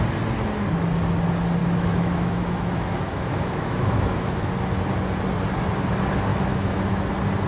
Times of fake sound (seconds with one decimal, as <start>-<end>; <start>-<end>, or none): 1.6-4.5; 6.3-7.0